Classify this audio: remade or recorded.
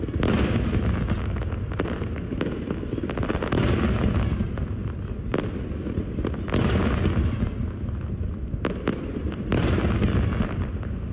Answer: recorded